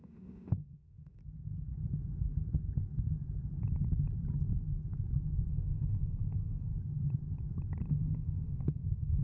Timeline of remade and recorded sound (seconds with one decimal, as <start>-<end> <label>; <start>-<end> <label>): 0.0-1.2 remade; 1.2-5.5 recorded; 5.5-6.7 remade; 6.7-7.9 recorded; 7.9-9.2 remade